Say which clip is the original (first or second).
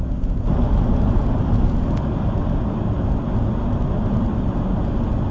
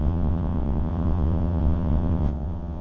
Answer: first